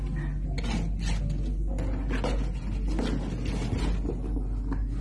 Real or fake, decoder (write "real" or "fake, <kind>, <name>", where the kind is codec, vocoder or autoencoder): real